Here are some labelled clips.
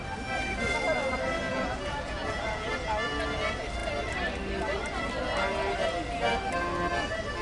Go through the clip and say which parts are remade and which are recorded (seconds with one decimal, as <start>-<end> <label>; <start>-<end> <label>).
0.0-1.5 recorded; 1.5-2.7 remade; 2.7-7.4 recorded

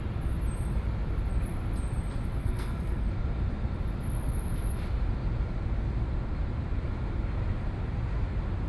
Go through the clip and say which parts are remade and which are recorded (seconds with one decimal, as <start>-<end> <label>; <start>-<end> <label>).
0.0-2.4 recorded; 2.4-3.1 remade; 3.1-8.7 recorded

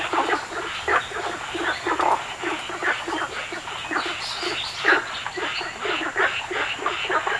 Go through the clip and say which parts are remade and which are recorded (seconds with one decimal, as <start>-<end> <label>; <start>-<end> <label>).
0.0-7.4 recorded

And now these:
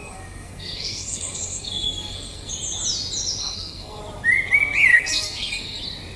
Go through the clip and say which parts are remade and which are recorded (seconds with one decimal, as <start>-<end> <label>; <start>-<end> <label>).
0.0-2.5 remade; 2.5-3.4 recorded; 3.4-4.0 remade; 4.0-4.9 recorded; 4.9-5.8 remade; 5.8-6.2 recorded

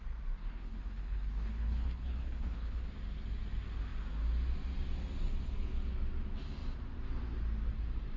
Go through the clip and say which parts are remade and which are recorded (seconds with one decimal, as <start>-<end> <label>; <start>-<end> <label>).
0.0-0.4 recorded; 0.4-2.8 remade; 2.8-8.2 recorded